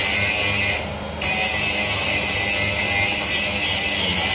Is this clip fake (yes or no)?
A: no